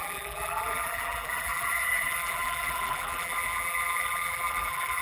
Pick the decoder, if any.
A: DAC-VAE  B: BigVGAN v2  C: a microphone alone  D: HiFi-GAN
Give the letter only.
B